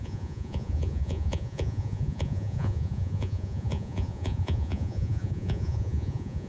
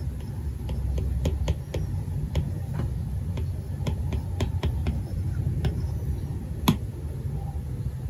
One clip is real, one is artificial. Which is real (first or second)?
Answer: second